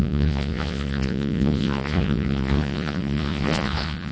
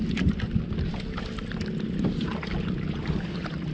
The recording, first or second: second